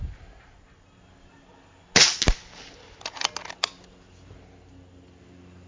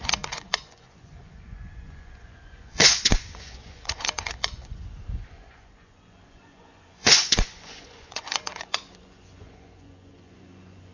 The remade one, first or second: second